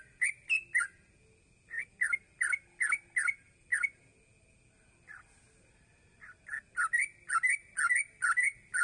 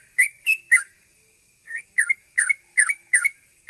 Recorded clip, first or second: first